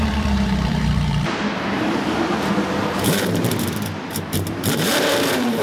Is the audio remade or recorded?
remade